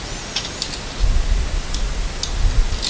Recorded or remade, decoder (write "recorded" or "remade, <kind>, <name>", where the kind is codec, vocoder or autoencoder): recorded